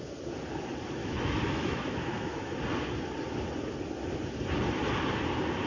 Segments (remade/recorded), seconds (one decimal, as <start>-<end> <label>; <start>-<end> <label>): 0.0-1.0 recorded; 1.0-2.5 remade; 2.5-5.7 recorded